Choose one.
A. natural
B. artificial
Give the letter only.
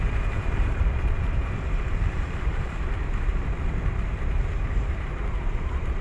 B